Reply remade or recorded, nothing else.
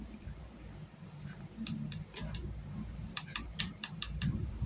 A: remade